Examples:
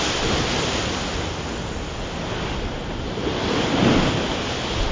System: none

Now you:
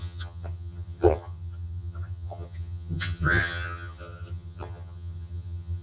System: vocoder, HiFi-GAN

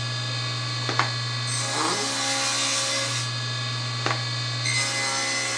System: none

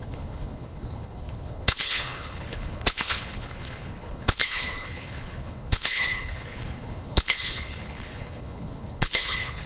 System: codec, HILCodec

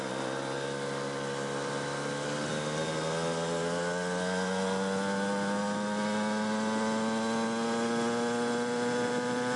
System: none